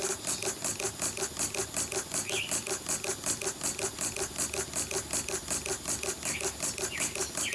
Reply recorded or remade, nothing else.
recorded